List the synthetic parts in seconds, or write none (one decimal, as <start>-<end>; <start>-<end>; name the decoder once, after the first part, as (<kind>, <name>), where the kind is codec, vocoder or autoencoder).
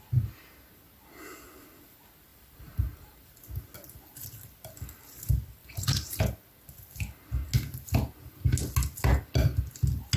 2.3-3.3 (vocoder, BigVGAN v2); 5.6-6.2